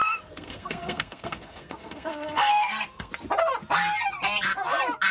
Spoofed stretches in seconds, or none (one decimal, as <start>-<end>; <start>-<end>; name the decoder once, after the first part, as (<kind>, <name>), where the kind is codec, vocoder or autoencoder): 0.0-3.1 (codec, SNAC)